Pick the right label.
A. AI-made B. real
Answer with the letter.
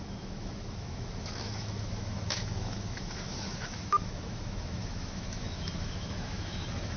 A